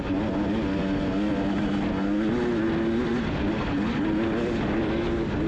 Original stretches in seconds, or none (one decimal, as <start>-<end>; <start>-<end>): 0.0-5.5